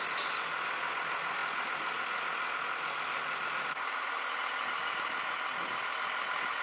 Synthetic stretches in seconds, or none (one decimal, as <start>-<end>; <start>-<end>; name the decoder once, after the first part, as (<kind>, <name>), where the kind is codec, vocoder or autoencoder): none